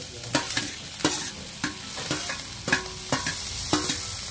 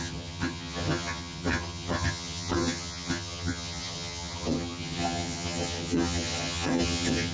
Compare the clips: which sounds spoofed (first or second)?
second